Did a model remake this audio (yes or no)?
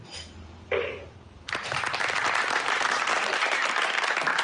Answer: yes